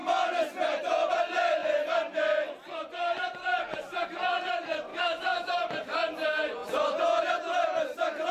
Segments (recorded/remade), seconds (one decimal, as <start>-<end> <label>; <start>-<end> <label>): 0.0-4.9 recorded; 4.9-5.5 remade; 5.5-8.3 recorded